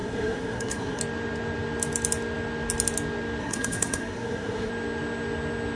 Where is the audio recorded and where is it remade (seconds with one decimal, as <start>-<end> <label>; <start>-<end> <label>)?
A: 0.0-1.0 remade; 1.0-3.4 recorded; 3.4-4.7 remade; 4.7-5.8 recorded